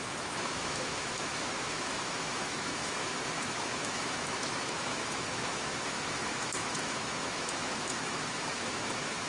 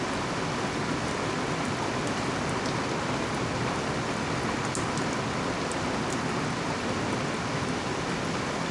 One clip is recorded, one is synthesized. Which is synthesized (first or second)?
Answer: first